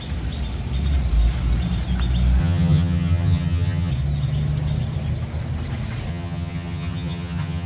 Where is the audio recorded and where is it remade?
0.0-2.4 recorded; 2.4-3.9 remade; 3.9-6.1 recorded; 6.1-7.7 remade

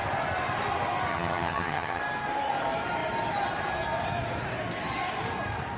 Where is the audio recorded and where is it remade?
0.0-1.1 recorded; 1.1-2.0 remade; 2.0-5.8 recorded